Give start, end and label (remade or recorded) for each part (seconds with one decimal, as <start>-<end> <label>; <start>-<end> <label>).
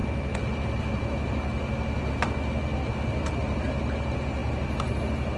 0.0-5.4 recorded